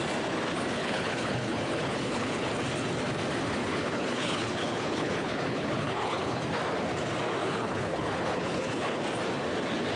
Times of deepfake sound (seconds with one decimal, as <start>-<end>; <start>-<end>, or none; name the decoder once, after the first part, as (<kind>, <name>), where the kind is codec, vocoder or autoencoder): 0.8-2.5 (codec, HILCodec); 3.6-6.4; 7.4-9.0